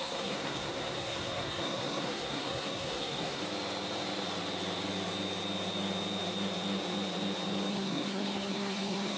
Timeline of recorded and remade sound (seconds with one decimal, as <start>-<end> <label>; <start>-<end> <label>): 0.0-3.4 remade; 3.4-7.7 recorded; 7.7-9.2 remade